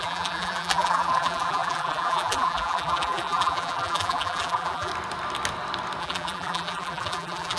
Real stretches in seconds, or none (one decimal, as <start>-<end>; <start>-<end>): 4.9-6.0